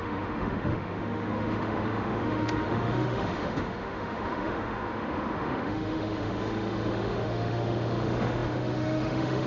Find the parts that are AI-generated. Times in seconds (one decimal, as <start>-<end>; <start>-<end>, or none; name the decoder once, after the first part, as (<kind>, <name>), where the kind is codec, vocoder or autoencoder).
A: 0.0-9.5 (autoencoder, DAC-VAE)